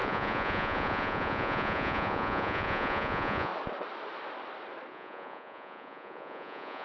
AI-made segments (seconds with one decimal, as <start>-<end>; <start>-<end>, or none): 0.0-3.5; 4.9-6.8